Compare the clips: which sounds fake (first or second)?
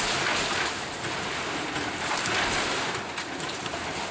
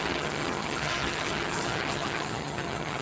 second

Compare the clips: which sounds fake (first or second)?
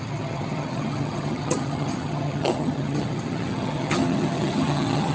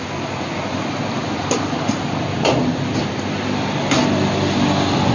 first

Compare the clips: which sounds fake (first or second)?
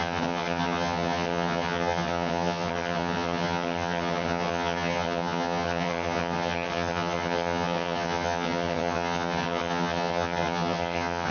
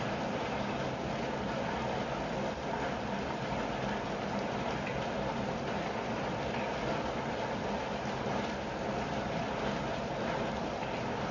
first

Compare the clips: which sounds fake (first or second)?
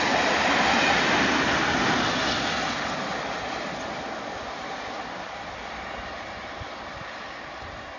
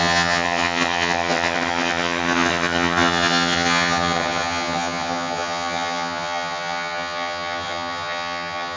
second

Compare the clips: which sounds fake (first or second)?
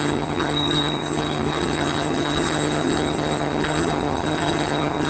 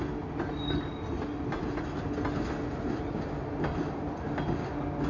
first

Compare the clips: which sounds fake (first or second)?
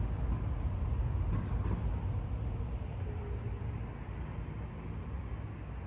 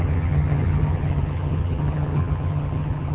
second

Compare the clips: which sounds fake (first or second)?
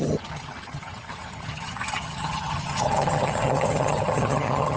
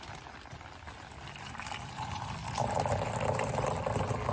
first